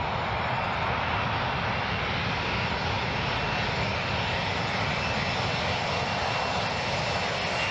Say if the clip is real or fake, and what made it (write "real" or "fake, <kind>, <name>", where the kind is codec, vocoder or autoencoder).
real